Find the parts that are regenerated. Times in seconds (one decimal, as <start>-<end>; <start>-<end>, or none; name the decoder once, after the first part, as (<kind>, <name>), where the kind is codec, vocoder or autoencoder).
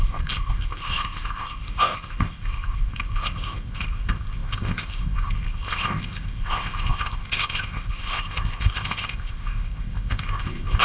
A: 0.0-10.8 (codec, ZipCodec)